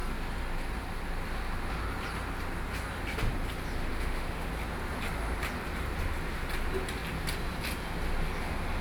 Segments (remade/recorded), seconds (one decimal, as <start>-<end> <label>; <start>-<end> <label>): 0.0-3.9 recorded; 3.9-4.5 remade; 4.5-8.8 recorded